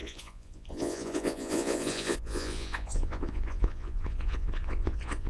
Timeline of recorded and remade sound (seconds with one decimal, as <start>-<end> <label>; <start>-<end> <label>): 0.0-5.3 remade